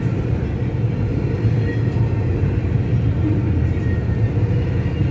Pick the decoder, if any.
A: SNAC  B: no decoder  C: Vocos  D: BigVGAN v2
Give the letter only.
B